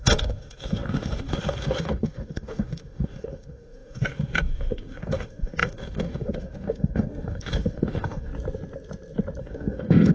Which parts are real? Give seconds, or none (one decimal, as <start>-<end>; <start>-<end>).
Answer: 8.3-9.4